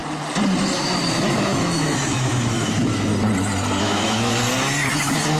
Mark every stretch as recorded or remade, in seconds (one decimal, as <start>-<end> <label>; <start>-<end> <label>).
0.0-1.1 recorded; 1.1-3.1 remade; 3.1-3.8 recorded; 3.8-4.3 remade; 4.3-4.9 recorded; 4.9-5.4 remade